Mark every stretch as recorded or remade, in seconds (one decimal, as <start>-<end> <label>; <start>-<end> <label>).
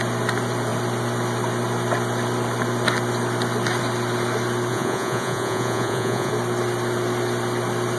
0.0-4.7 recorded; 4.7-6.3 remade; 6.3-8.0 recorded